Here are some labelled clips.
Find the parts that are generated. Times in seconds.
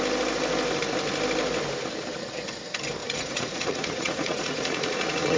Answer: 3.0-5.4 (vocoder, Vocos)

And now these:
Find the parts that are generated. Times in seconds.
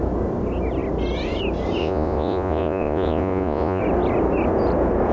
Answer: 1.8-3.8 (vocoder, Vocos)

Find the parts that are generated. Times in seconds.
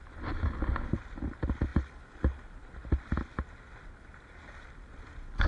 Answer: none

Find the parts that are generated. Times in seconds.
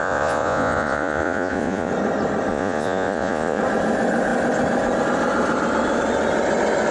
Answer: 0.0-1.9 (vocoder, Vocos); 2.5-3.6